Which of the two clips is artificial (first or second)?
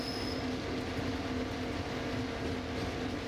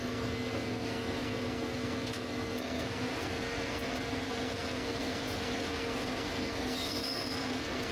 second